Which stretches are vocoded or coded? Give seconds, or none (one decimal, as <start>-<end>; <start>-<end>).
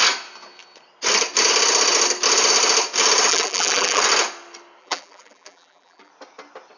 3.3-4.0; 4.8-6.1